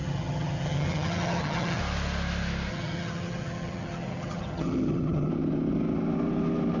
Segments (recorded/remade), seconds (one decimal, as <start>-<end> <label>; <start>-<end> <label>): 0.0-1.8 remade; 1.8-2.7 recorded; 2.7-5.3 remade; 5.3-6.8 recorded